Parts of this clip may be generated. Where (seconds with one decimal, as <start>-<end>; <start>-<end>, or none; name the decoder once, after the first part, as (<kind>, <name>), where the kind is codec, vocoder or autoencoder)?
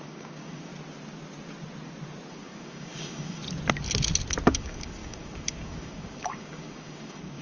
0.0-0.7 (codec, DAC); 2.3-3.4; 4.5-7.4